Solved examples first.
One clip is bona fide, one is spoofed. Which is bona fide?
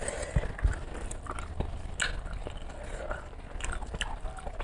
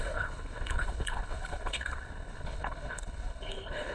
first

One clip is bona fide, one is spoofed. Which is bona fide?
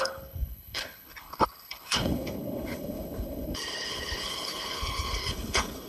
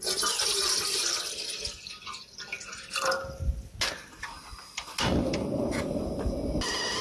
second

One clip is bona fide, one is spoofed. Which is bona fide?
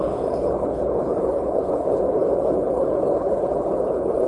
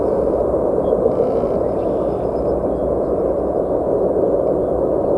second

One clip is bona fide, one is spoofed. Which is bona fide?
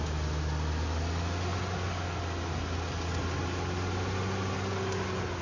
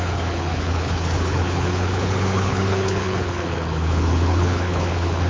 first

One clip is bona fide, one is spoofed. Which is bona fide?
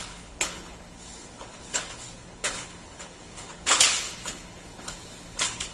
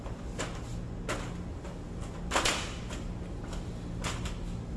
second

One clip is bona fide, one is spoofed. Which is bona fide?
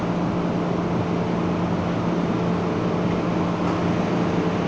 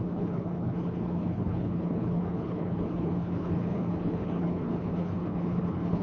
first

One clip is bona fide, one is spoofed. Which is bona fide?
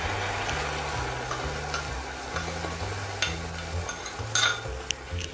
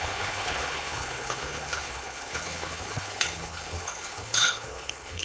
first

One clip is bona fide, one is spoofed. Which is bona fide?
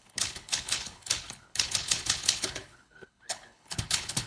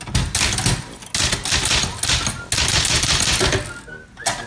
second